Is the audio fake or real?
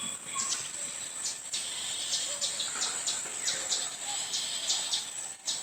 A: real